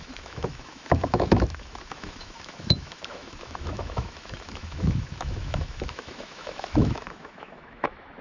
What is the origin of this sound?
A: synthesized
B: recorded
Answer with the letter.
A